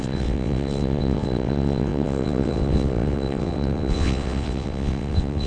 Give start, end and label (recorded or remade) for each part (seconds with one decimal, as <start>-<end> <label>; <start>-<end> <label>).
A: 0.0-5.5 remade